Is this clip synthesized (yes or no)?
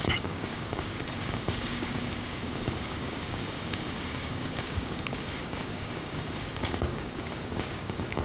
yes